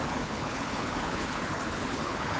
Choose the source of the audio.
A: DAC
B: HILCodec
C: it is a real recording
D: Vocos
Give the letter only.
B